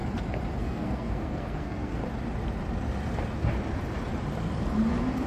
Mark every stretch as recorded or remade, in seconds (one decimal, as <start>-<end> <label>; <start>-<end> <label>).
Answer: 0.0-0.6 recorded; 0.6-2.0 remade; 2.0-5.3 recorded